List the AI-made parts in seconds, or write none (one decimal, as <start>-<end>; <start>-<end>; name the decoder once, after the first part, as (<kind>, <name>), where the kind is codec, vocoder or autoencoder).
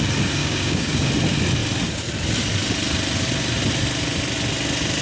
0.4-1.1 (codec, DAC)